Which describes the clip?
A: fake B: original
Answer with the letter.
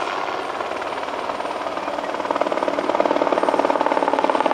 B